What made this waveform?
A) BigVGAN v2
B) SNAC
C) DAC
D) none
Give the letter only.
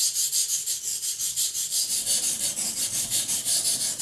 A